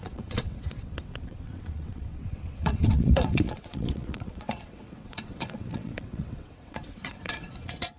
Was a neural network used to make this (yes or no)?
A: yes